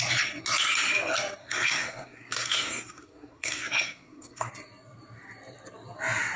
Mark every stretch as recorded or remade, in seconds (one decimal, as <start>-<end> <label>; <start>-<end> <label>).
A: 0.0-1.4 recorded; 1.4-4.5 remade; 4.5-6.4 recorded